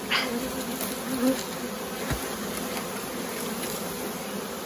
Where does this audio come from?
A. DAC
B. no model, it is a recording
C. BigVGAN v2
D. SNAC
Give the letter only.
B